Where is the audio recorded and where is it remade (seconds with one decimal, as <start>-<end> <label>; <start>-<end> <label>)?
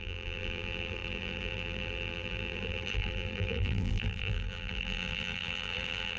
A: 0.0-6.2 remade